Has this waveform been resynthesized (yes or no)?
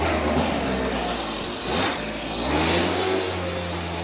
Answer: no